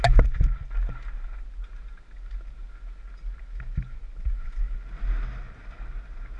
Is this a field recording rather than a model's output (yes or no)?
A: yes